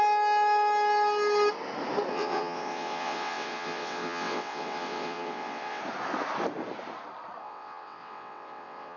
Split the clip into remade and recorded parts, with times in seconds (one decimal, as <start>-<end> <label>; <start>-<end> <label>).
0.0-2.1 recorded; 2.1-5.8 remade; 5.8-7.4 recorded; 7.4-9.0 remade